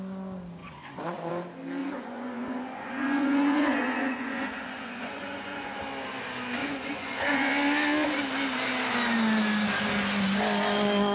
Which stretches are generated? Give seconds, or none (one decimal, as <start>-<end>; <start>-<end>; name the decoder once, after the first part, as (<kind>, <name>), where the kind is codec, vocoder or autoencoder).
0.6-1.3 (vocoder, Vocos); 1.8-5.8; 6.6-7.5